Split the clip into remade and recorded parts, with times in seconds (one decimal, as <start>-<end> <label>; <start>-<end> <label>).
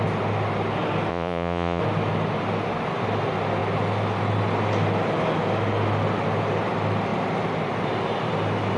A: 0.0-1.1 recorded; 1.1-1.8 remade; 1.8-8.8 recorded